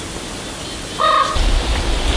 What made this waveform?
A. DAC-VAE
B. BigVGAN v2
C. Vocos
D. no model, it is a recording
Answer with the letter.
D